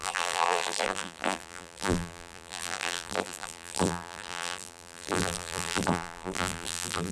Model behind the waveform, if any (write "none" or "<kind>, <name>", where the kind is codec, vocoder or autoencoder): vocoder, BigVGAN v2